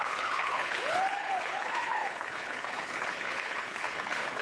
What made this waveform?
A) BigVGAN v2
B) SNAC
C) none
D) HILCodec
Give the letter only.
D